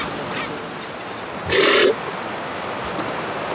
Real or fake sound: real